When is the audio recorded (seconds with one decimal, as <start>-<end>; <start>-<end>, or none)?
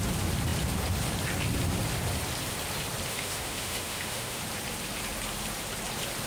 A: 0.0-3.1; 4.4-6.3